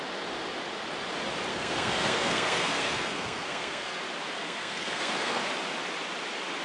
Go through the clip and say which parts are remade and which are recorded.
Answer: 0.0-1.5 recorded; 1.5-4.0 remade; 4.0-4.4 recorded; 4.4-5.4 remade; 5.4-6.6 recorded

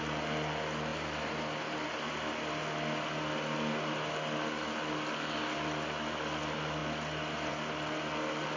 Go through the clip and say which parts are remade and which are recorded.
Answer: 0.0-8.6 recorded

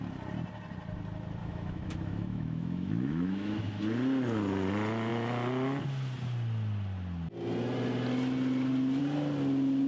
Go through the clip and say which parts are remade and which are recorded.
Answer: 0.0-1.4 recorded; 1.4-3.8 remade; 3.8-9.9 recorded